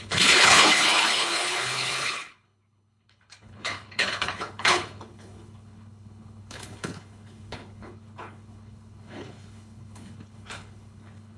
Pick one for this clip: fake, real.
fake